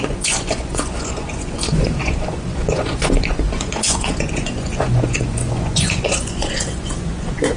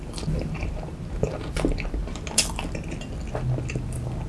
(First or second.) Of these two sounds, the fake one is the first